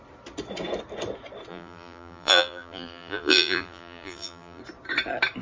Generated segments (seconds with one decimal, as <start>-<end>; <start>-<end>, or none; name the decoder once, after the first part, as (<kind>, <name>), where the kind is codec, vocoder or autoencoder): 1.5-4.6 (vocoder, BigVGAN v2)